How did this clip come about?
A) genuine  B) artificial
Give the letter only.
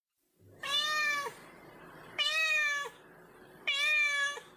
A